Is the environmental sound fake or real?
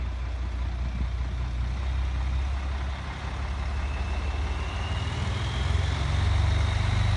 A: real